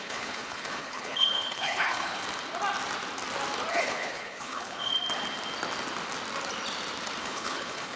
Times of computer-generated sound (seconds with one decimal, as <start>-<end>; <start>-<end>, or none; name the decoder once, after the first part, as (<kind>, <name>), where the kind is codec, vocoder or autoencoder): 0.0-2.2 (codec, HILCodec); 3.7-4.9; 7.2-8.0

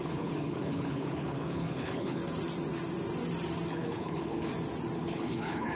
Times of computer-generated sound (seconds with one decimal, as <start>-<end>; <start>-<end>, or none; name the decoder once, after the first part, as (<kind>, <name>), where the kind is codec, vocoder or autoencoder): 0.0-2.2 (codec, HILCodec); 3.7-4.5; 5.0-5.8

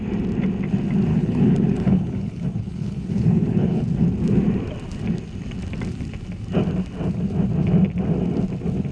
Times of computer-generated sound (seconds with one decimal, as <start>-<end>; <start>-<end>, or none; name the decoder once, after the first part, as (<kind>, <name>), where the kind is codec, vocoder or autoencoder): 1.1-3.8 (codec, HILCodec)

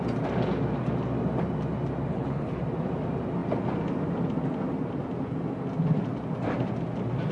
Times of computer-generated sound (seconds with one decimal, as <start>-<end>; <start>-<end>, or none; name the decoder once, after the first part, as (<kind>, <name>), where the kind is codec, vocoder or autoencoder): 2.1-2.6 (codec, HILCodec)

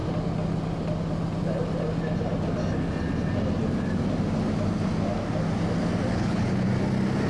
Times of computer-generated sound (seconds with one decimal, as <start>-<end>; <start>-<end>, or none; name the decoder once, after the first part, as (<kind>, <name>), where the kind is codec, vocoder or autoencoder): 6.1-6.7 (codec, HILCodec)

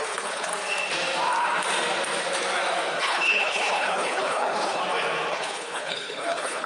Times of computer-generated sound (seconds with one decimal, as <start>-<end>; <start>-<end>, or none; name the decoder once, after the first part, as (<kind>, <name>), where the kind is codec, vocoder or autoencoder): 0.0-0.5 (codec, HILCodec); 3.0-4.8; 5.3-6.7

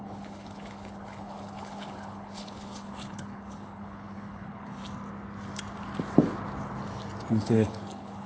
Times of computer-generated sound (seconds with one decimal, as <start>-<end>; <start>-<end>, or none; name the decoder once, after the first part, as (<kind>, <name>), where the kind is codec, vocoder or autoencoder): 0.0-4.8 (codec, HILCodec); 7.3-8.3